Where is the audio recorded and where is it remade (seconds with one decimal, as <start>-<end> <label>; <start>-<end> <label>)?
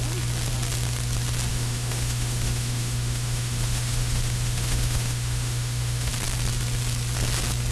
0.0-1.5 recorded; 1.5-6.1 remade; 6.1-7.7 recorded